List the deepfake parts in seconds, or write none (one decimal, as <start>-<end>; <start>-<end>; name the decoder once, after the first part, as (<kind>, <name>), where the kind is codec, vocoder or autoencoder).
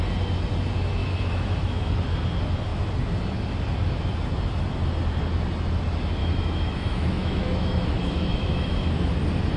1.0-1.9 (autoencoder, DAC-VAE); 6.2-9.1